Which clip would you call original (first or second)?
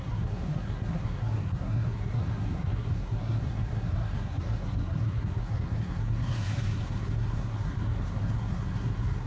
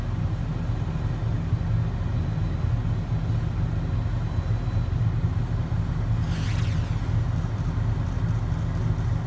second